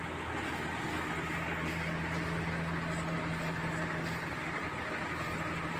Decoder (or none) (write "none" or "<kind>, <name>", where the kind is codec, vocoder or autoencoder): none